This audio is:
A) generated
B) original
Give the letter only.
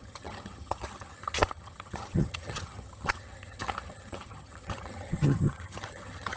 A